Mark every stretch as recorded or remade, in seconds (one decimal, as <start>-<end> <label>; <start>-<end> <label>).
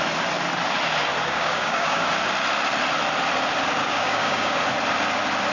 0.0-1.2 recorded; 1.2-2.1 remade; 2.1-3.8 recorded; 3.8-4.6 remade; 4.6-5.5 recorded